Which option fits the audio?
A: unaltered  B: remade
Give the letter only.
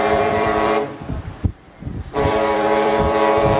B